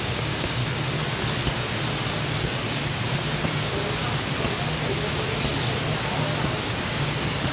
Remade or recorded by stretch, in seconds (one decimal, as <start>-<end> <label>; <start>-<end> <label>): 0.0-0.6 remade; 0.6-2.3 recorded; 2.3-4.0 remade; 4.0-6.4 recorded; 6.4-7.5 remade